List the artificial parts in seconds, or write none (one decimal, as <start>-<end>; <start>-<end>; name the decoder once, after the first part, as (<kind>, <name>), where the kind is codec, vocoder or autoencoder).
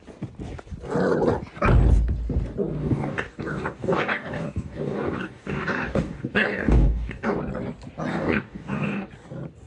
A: 2.8-7.4 (codec, DAC); 8.1-9.1